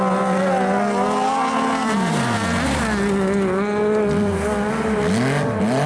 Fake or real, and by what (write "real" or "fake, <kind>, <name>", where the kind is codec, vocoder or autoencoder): real